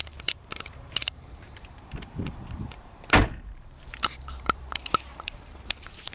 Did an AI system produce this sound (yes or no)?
yes